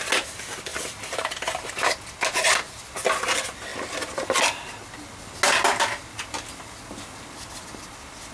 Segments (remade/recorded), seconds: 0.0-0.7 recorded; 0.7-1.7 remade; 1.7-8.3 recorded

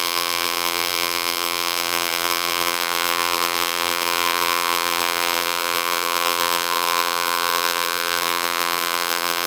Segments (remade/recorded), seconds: 0.0-9.5 remade

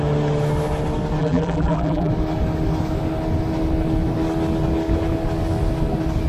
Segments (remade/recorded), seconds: 0.0-1.2 recorded; 1.2-2.1 remade; 2.1-6.3 recorded

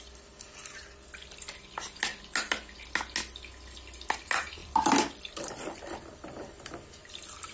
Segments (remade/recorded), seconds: 0.0-4.6 recorded; 4.6-7.5 remade

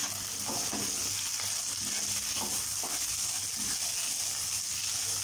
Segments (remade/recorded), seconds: 0.0-5.2 recorded

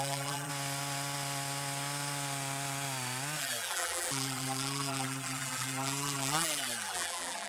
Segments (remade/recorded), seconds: 0.0-0.5 remade; 0.5-3.4 recorded; 3.4-7.5 remade

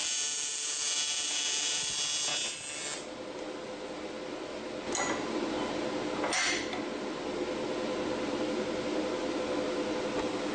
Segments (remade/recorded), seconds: 0.0-1.8 remade; 1.8-10.5 recorded

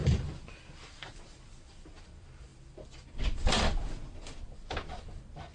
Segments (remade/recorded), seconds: 0.0-5.5 remade